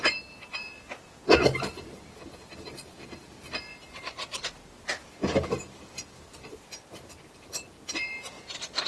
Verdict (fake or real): real